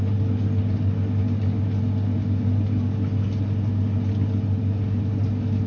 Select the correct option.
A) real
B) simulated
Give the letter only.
A